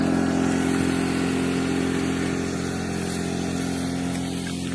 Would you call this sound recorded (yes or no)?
yes